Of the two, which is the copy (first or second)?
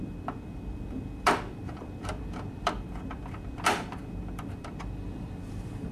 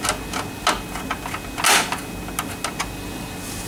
first